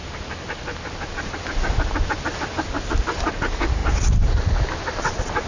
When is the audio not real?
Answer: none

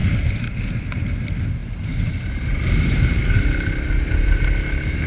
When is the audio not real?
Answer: 0.0-0.8 (vocoder, BigVGAN v2); 1.6-4.4

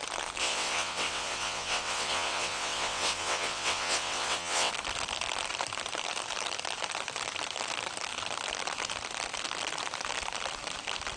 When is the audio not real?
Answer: 0.4-4.7 (vocoder, WaveNeXt)